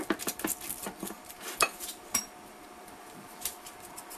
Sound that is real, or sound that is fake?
real